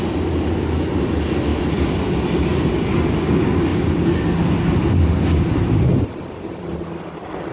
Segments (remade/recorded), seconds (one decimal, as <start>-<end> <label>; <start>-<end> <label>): 0.0-3.7 remade; 3.7-5.7 recorded; 5.7-7.5 remade